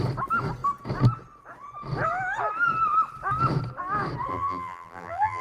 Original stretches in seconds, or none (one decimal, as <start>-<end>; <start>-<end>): 0.0-4.3